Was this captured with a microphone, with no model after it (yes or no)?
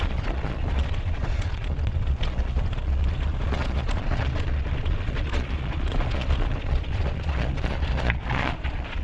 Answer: no